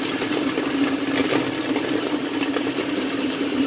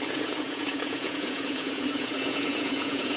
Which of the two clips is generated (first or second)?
second